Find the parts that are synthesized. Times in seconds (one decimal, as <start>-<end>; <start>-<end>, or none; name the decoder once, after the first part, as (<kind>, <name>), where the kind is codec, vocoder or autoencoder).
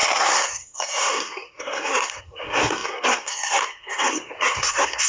0.0-5.1 (codec, SNAC)